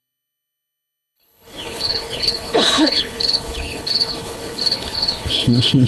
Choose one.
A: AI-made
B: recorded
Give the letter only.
A